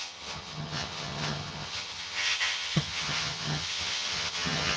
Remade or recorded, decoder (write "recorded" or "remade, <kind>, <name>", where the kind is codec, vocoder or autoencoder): remade, vocoder, HiFi-GAN